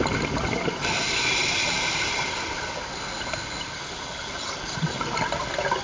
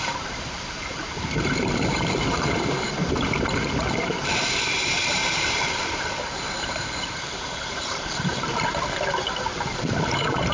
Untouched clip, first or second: first